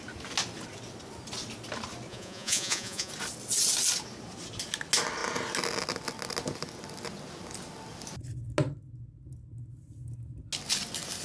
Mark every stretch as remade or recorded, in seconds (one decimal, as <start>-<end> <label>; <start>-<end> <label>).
0.0-2.1 recorded; 2.1-3.1 remade; 3.1-11.2 recorded